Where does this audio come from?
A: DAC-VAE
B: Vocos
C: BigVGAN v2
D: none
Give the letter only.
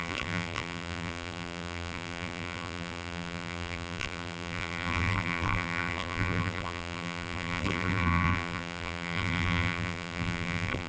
C